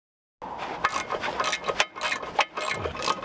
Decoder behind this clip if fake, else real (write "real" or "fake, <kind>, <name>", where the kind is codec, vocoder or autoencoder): real